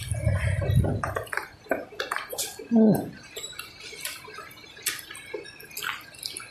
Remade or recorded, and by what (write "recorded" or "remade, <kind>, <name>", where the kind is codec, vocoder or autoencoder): recorded